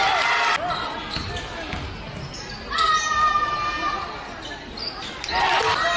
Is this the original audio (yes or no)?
yes